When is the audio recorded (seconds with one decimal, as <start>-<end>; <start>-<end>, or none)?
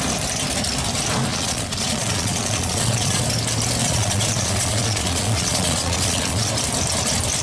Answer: 0.0-1.3; 3.2-3.8; 6.5-7.4